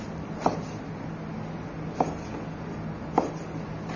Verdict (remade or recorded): recorded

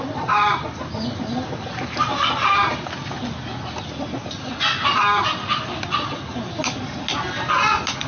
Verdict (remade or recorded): recorded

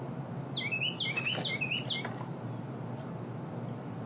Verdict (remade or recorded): recorded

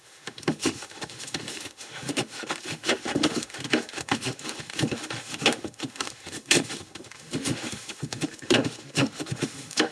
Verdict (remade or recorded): remade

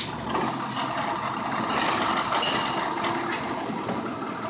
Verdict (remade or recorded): recorded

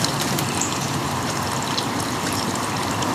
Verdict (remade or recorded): remade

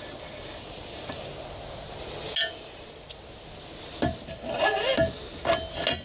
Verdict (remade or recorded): recorded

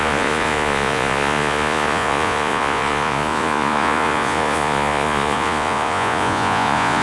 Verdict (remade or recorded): remade